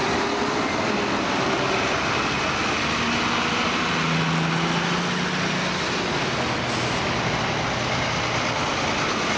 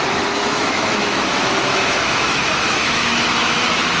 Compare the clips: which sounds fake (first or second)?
second